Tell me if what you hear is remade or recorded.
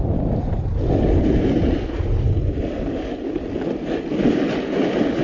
recorded